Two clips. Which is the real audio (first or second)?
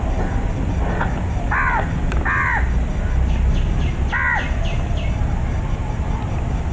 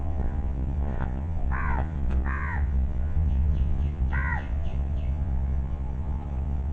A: first